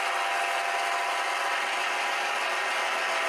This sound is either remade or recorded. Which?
recorded